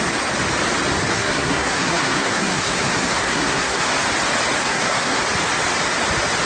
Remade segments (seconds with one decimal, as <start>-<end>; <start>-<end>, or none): 1.1-3.9; 4.6-5.2